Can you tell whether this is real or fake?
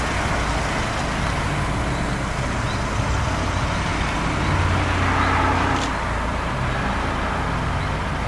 real